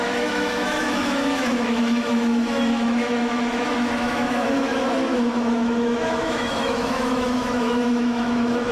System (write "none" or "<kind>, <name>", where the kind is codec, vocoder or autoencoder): autoencoder, DAC-VAE